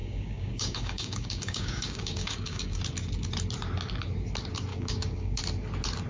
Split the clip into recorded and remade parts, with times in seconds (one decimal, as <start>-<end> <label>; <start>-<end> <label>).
0.0-2.8 remade; 2.8-4.7 recorded; 4.7-5.4 remade; 5.4-6.1 recorded